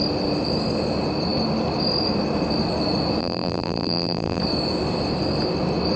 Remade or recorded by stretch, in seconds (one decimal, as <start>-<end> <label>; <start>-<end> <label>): 0.0-3.2 recorded; 3.2-4.4 remade; 4.4-6.0 recorded